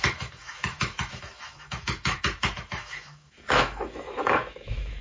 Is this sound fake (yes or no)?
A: yes